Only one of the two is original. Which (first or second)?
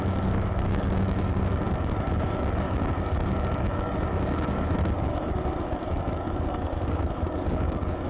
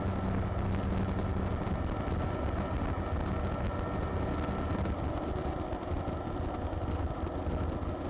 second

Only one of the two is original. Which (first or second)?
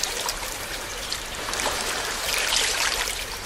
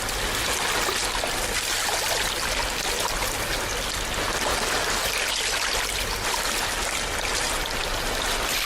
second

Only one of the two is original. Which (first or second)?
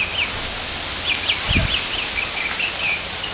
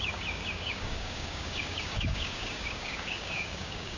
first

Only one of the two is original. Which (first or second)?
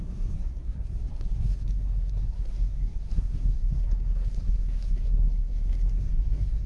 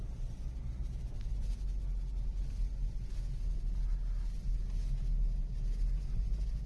second